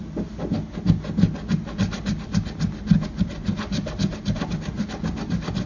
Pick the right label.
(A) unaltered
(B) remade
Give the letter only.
A